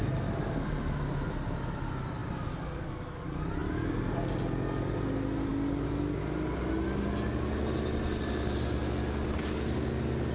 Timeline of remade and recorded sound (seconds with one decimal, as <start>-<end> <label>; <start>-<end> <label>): 0.0-10.3 recorded